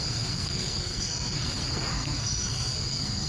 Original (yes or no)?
no